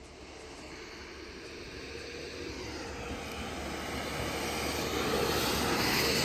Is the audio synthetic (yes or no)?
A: no